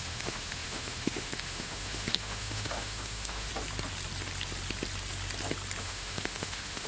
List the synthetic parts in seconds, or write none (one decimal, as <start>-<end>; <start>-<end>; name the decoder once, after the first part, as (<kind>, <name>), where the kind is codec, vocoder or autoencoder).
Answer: 0.0-3.5 (autoencoder, DAC-VAE); 5.8-6.9